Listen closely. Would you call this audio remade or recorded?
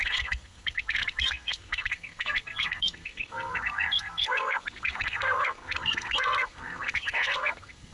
remade